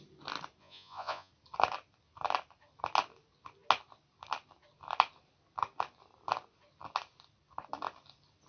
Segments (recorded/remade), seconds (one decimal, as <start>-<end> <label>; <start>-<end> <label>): 0.0-0.6 recorded; 0.6-1.3 remade; 1.3-8.5 recorded